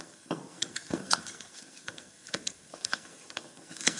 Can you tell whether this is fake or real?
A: fake